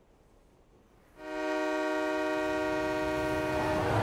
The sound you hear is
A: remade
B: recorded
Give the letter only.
B